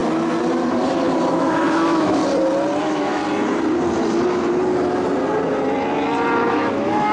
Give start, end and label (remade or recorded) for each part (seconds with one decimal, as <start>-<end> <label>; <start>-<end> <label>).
0.0-1.3 recorded; 1.3-2.2 remade; 2.2-2.8 recorded; 2.8-3.2 remade; 3.2-6.5 recorded; 6.5-7.1 remade